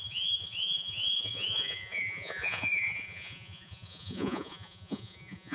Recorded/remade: remade